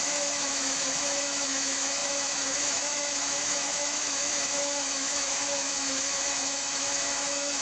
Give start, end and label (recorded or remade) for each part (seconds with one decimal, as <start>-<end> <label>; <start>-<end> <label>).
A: 0.0-7.6 remade